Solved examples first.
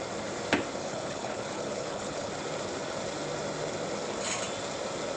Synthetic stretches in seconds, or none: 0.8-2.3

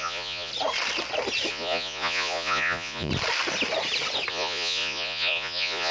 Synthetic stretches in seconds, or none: 0.0-0.5; 1.5-3.1; 4.3-5.9

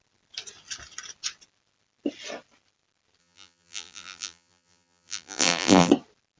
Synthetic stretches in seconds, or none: 3.2-5.9

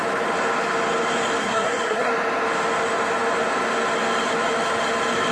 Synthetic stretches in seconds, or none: 1.4-2.1